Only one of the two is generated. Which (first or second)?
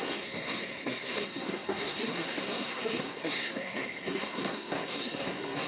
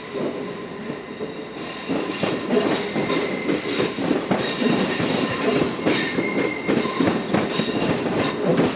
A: first